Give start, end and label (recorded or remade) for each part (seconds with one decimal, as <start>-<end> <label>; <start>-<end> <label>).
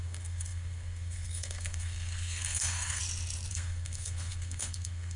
0.0-3.0 remade; 3.0-3.5 recorded; 3.5-5.2 remade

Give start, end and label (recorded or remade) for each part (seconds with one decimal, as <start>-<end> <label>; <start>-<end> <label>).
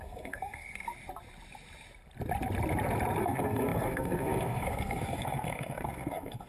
0.0-0.9 remade; 0.9-3.2 recorded; 3.2-6.5 remade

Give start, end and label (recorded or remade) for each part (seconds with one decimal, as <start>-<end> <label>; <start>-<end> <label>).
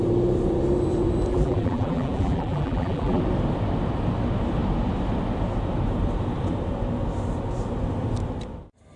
0.0-1.3 recorded; 1.3-3.2 remade; 3.2-9.0 recorded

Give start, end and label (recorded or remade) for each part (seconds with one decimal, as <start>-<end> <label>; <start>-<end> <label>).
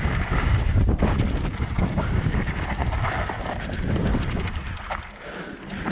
0.0-0.7 remade; 0.7-1.6 recorded; 1.6-2.8 remade; 2.8-5.9 recorded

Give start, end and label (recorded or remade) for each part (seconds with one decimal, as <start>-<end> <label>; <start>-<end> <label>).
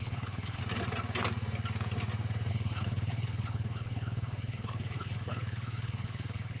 0.0-0.6 remade; 0.6-2.5 recorded; 2.5-6.6 remade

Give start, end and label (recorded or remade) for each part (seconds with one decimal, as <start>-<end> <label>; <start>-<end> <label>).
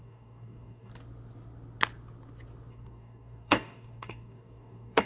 0.0-0.9 remade; 0.9-2.7 recorded; 2.7-5.1 remade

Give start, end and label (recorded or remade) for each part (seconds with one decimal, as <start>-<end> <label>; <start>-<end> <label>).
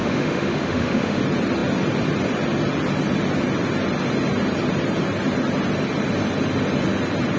0.0-1.2 remade; 1.2-7.4 recorded